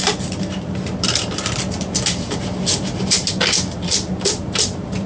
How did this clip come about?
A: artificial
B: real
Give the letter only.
A